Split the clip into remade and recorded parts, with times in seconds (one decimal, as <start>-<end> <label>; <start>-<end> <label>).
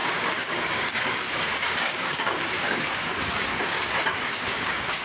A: 0.0-5.0 remade